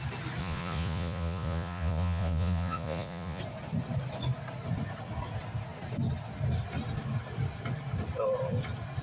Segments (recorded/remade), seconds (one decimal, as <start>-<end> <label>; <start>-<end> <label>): 0.0-0.4 recorded; 0.4-3.4 remade; 3.4-9.0 recorded